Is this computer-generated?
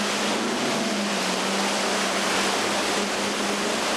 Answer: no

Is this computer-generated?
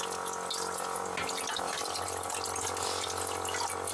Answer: no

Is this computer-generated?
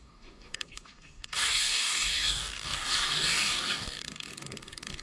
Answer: yes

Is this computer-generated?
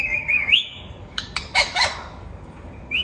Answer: yes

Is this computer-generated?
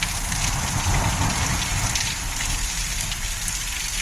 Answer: no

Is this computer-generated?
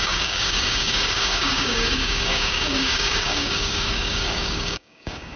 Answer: yes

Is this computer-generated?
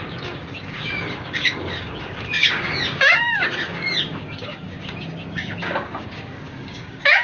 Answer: yes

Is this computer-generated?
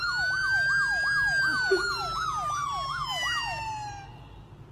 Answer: no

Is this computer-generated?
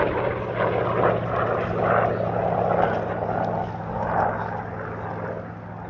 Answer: no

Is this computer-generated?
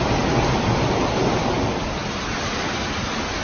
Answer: no